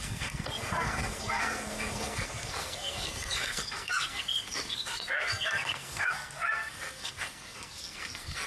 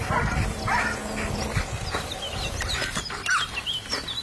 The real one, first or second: second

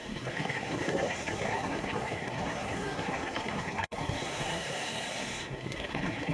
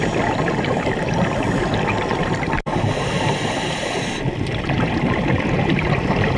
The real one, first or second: second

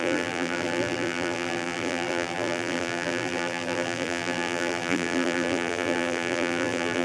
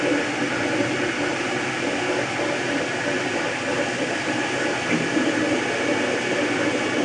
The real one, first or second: second